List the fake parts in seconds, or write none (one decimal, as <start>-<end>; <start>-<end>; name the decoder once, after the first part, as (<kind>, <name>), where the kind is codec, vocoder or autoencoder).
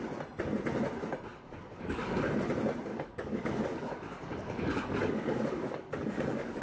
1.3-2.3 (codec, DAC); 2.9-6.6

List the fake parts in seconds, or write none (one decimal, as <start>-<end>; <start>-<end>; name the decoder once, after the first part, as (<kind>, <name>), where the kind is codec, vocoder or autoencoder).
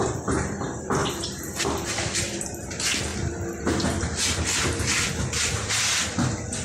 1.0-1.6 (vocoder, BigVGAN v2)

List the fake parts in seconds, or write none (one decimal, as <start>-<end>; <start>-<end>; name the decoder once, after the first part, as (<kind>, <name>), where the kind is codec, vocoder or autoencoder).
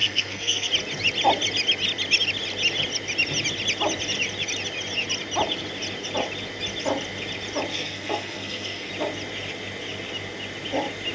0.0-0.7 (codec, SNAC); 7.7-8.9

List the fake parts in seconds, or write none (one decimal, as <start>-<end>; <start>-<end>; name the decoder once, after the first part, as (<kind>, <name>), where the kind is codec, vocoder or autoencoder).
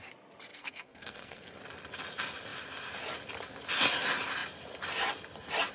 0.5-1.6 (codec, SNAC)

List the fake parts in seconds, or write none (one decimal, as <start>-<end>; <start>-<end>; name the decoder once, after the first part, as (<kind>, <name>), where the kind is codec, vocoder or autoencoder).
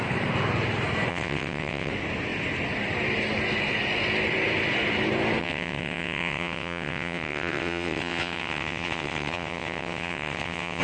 1.1-1.9 (vocoder, WaveNeXt); 5.4-10.8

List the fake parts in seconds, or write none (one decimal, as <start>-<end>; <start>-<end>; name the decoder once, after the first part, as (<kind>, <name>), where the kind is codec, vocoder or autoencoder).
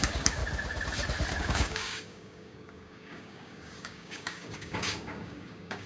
0.0-0.4 (codec, DAC); 1.4-5.9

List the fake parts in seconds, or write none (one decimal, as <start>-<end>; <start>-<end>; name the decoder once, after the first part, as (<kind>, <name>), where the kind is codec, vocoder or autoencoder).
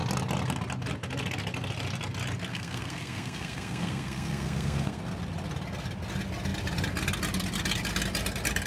2.5-5.0 (codec, SNAC)